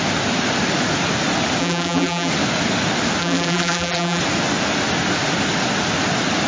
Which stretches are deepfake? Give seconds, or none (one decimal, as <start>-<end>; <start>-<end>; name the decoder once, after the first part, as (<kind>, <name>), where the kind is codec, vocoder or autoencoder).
1.6-2.3 (vocoder, BigVGAN v2); 3.2-4.2